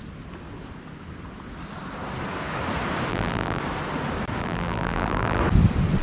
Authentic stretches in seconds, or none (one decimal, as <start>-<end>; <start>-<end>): 0.0-3.1; 3.6-4.4; 5.4-6.0